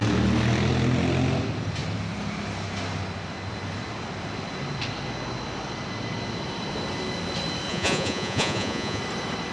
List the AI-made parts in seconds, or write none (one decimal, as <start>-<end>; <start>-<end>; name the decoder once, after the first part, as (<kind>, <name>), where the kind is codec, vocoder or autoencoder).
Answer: 7.7-9.0 (vocoder, Vocos)

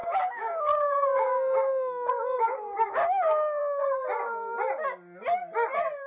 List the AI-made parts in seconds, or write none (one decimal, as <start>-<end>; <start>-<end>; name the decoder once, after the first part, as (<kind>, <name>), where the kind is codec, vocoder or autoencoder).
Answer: 0.0-3.6 (codec, DAC)

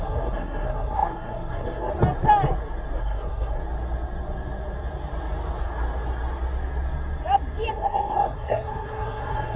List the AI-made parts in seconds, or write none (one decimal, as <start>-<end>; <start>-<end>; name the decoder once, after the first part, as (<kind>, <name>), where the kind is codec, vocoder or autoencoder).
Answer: 0.0-1.9 (codec, SNAC); 3.0-3.6; 7.7-9.6

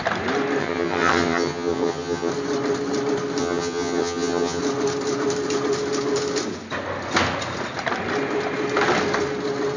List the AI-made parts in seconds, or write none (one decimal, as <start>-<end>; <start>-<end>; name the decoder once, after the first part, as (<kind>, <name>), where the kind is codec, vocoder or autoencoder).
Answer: 0.6-2.3 (vocoder, HiFi-GAN); 3.4-4.6

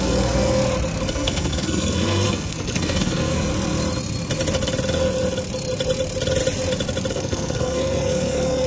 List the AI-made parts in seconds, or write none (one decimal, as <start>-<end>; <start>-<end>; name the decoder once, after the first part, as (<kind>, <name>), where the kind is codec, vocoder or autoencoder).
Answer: 0.0-0.6 (codec, SNAC); 1.1-3.5; 7.1-8.7

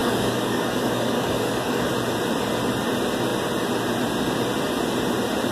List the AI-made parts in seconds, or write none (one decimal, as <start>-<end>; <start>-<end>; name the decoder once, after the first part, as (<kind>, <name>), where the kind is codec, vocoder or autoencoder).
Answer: 0.0-1.9 (codec, DAC)